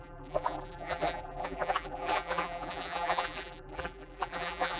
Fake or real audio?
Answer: fake